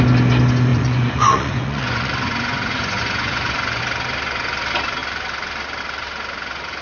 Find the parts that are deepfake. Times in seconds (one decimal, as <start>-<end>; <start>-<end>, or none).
0.7-3.8